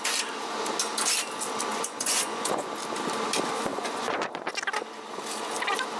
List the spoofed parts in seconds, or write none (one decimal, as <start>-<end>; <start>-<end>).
1.7-2.7; 3.7-4.5